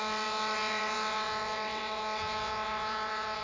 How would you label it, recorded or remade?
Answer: remade